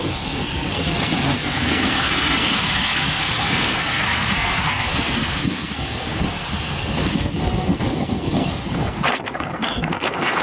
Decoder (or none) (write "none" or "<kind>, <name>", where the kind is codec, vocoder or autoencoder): codec, SNAC